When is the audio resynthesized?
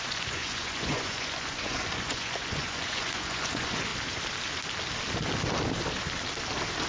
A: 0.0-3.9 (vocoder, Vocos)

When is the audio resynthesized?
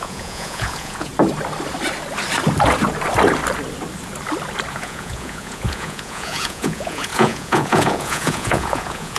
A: 0.0-1.1 (vocoder, Vocos); 4.7-9.2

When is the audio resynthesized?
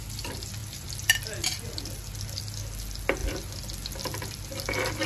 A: none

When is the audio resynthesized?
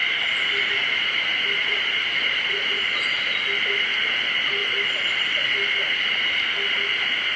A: 1.6-2.9 (vocoder, Vocos)